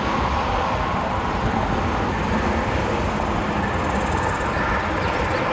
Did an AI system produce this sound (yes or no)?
no